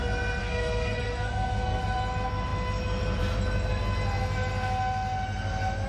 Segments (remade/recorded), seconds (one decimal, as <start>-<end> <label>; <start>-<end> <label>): 0.0-0.4 recorded; 0.4-1.8 remade; 1.8-5.9 recorded